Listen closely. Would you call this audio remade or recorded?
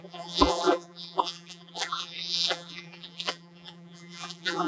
remade